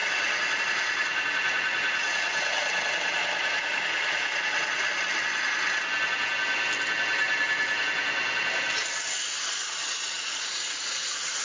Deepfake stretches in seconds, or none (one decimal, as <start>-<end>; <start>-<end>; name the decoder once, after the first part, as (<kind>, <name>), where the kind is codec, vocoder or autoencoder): 0.0-2.6 (vocoder, Vocos); 3.4-4.9; 9.9-11.4